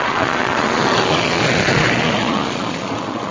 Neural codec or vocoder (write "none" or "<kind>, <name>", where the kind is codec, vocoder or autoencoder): vocoder, Vocos